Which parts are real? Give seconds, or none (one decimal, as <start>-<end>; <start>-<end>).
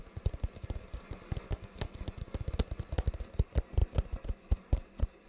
0.0-5.3